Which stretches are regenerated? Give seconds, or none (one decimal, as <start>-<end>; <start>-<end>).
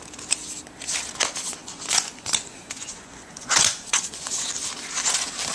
1.6-4.5